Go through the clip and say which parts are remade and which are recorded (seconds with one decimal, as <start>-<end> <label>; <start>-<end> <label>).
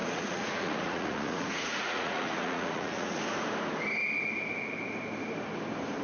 0.0-3.2 remade; 3.2-6.0 recorded